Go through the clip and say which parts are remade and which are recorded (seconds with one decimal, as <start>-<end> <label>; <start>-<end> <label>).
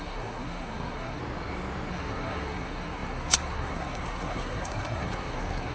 0.0-1.2 remade; 1.2-1.9 recorded; 1.9-5.7 remade